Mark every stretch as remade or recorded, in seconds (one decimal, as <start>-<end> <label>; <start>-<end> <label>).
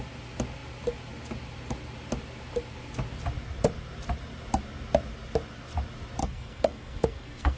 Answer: 0.0-6.2 recorded; 6.2-7.6 remade